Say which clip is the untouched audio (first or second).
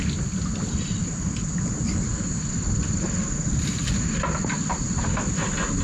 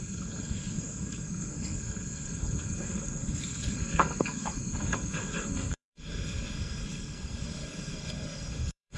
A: first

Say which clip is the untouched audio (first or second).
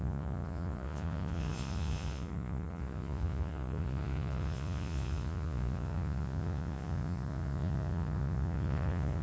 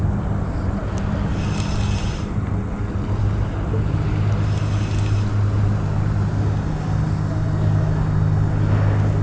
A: second